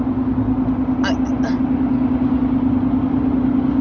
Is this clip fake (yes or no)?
no